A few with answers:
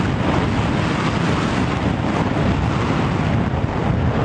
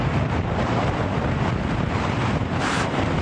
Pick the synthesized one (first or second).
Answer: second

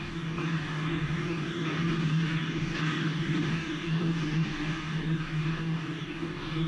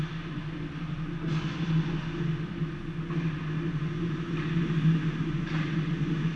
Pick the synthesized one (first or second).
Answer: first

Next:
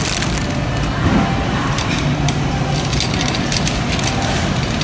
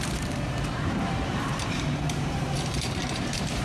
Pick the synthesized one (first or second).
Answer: second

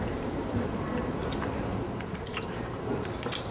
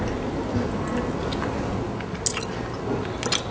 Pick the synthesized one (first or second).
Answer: first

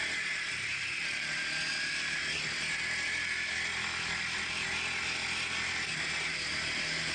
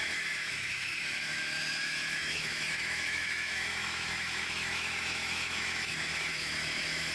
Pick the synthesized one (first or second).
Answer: second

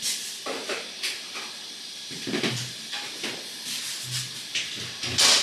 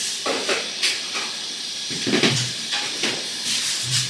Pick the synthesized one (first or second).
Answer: second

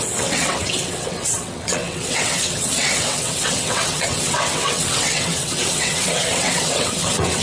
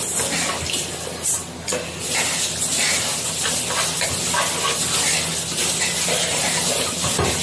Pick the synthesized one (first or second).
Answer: first